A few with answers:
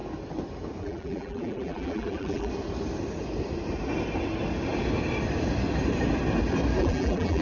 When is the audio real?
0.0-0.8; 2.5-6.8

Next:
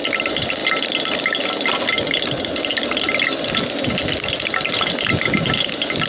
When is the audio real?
0.0-6.1

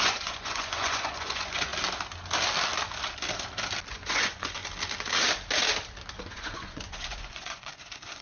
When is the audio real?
1.7-3.9; 4.6-6.2

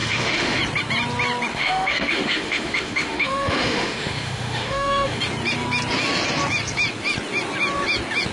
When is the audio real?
0.6-1.5; 5.2-8.3

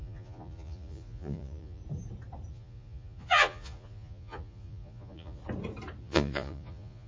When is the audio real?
1.8-2.5; 5.4-6.0

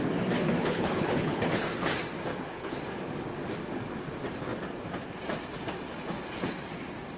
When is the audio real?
0.0-0.6; 1.8-2.3; 2.8-7.2